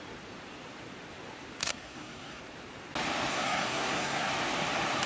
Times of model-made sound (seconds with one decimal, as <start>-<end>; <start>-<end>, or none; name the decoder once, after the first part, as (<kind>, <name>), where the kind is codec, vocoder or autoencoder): 1.6-2.4 (codec, SNAC); 3.3-4.3